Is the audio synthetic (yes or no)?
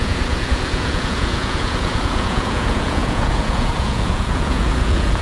yes